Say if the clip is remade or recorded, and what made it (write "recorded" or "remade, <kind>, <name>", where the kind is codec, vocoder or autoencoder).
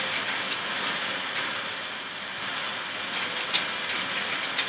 recorded